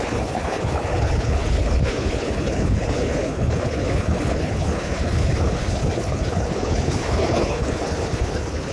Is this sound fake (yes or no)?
yes